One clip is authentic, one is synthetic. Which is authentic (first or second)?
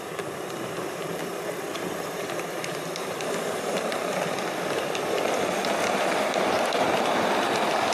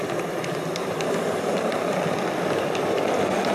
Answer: second